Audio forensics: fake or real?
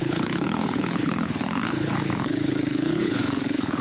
fake